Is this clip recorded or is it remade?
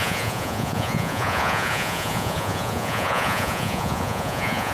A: remade